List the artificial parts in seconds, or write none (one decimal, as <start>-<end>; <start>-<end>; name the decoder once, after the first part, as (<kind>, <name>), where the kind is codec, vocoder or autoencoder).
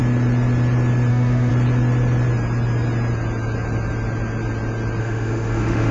1.1-1.5 (autoencoder, DAC-VAE); 5.0-5.9